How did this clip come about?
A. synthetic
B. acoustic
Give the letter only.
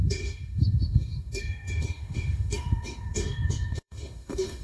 A